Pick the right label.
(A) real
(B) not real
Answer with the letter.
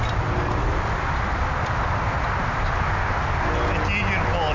A